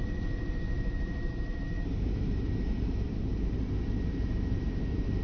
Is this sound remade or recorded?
remade